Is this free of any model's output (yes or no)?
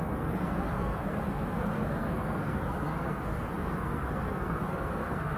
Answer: no